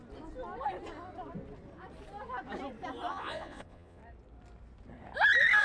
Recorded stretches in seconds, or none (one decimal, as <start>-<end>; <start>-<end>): 0.0-3.1; 4.0-5.6